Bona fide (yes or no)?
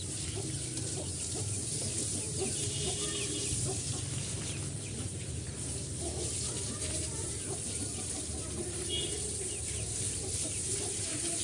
no